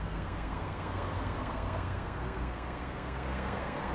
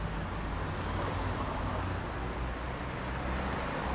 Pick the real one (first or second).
second